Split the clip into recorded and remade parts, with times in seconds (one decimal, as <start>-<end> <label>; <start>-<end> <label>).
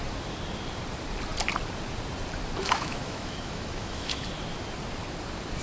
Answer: 0.0-2.6 recorded; 2.6-4.2 remade; 4.2-5.6 recorded